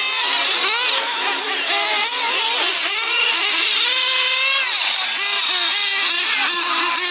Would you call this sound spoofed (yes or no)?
no